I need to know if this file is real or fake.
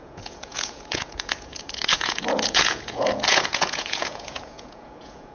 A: fake